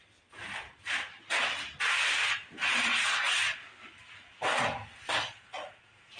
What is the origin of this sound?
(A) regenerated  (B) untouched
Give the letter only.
B